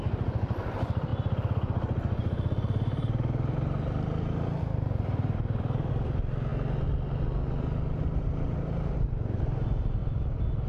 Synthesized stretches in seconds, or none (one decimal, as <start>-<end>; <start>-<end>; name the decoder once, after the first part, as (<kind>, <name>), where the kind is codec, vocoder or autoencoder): 0.0-6.5 (vocoder, BigVGAN v2); 8.0-10.0